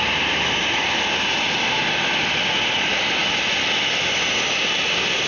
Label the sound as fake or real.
real